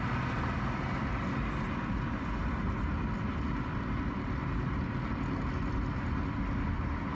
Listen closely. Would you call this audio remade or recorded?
recorded